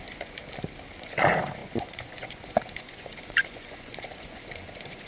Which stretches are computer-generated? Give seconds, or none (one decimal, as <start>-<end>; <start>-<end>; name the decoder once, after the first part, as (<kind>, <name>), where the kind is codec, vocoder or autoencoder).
0.0-0.4 (vocoder, Vocos); 1.0-5.1